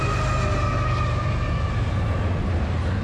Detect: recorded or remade recorded